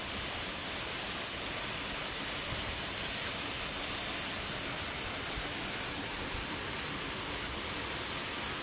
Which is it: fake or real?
real